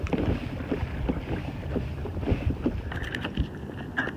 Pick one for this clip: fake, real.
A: real